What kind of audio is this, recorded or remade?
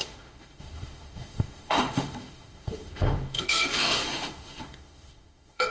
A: remade